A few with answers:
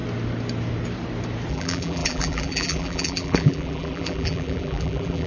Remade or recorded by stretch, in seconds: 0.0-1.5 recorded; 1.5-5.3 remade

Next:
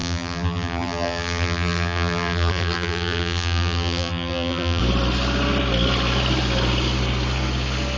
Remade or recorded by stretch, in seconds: 0.0-4.8 remade; 4.8-8.0 recorded